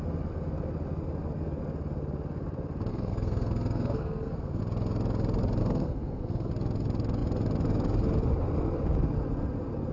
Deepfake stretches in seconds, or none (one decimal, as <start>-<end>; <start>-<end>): 2.9-4.6; 5.6-6.5